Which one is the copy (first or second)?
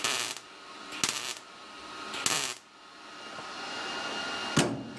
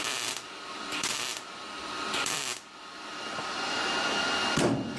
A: second